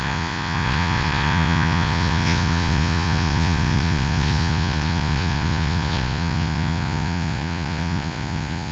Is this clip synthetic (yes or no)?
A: yes